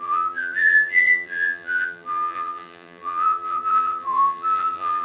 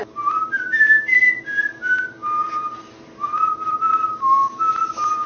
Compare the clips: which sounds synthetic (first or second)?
first